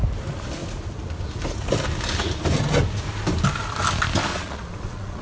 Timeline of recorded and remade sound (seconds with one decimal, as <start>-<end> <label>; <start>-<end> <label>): 0.0-4.3 recorded; 4.3-5.2 remade